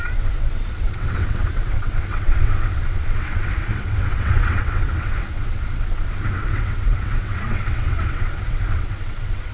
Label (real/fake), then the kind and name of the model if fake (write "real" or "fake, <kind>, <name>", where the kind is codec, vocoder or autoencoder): fake, vocoder, WaveNeXt